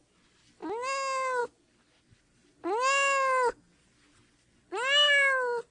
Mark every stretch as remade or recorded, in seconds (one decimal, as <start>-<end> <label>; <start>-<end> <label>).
0.0-5.7 recorded